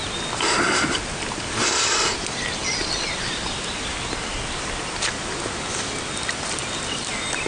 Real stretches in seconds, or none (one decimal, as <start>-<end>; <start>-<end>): 0.0-7.5